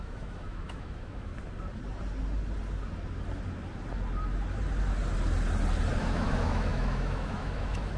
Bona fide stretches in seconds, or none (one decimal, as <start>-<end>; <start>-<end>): 1.3-6.0